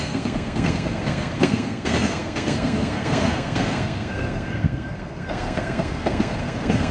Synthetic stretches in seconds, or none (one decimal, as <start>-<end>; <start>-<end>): 0.0-6.9